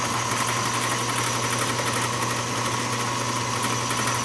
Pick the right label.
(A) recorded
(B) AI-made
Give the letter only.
A